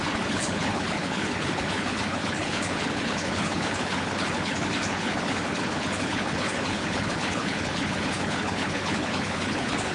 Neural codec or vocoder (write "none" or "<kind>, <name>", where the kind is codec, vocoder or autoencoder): codec, HILCodec